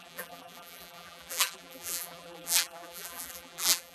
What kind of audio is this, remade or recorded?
remade